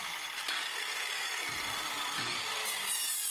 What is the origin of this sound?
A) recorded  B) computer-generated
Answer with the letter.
B